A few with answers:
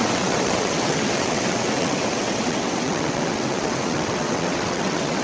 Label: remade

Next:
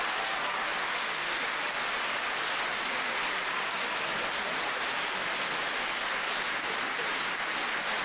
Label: recorded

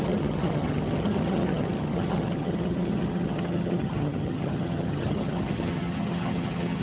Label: remade